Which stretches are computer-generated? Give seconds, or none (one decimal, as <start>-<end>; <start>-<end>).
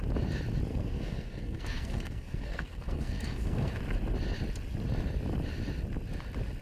0.7-3.7